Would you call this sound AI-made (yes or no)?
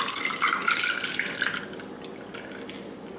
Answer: no